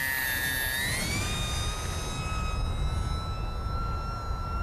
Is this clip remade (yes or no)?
no